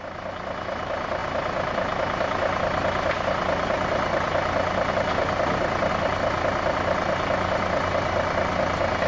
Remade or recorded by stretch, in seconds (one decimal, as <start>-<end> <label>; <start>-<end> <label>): 0.0-9.1 recorded